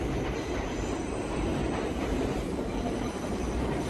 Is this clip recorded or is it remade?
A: remade